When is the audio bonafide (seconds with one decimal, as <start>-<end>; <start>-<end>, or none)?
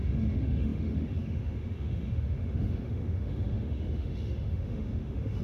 none